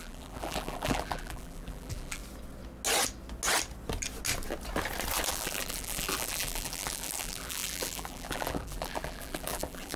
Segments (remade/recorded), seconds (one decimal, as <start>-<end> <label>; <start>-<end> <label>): 0.0-2.2 remade; 2.2-5.3 recorded; 5.3-10.0 remade